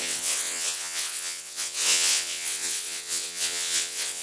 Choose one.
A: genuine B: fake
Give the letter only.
B